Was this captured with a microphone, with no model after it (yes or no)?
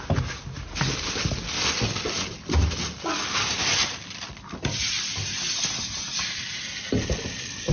yes